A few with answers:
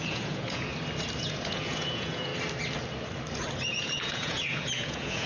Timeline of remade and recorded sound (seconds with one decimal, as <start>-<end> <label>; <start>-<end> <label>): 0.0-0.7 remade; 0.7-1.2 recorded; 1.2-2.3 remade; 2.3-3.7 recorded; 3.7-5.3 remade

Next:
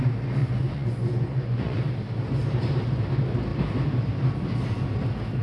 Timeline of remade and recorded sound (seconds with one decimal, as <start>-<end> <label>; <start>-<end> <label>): 0.0-0.4 recorded; 0.4-1.8 remade; 1.8-5.4 recorded

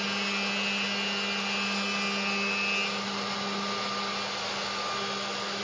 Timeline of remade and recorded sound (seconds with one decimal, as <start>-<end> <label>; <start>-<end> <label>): 0.0-5.6 recorded

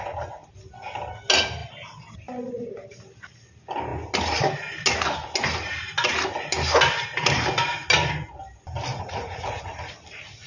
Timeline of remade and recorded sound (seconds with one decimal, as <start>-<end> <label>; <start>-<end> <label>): 0.0-8.9 recorded; 8.9-9.7 remade; 9.7-10.5 recorded

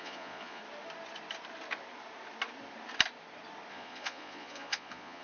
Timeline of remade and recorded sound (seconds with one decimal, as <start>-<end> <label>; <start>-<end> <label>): 0.0-0.6 remade; 0.6-3.7 recorded; 3.7-5.2 remade

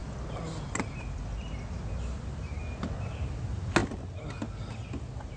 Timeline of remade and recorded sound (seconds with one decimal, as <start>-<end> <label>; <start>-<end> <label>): 0.0-5.4 recorded